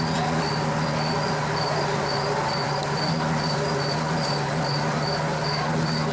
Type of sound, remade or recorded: recorded